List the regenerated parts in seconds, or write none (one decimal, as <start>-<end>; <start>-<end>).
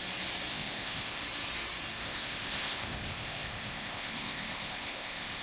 0.5-1.2; 2.0-5.4